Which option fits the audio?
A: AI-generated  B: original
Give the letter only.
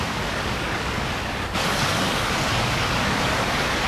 A